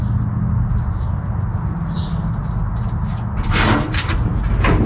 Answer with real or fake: real